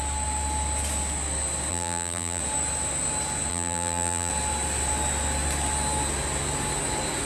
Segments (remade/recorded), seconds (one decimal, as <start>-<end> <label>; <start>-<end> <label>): 0.0-1.7 recorded; 1.7-2.4 remade; 2.4-3.5 recorded; 3.5-4.3 remade; 4.3-7.3 recorded